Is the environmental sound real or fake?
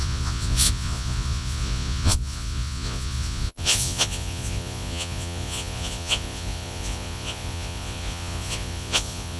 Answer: fake